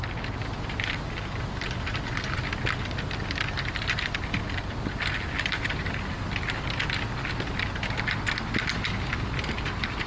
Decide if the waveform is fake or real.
real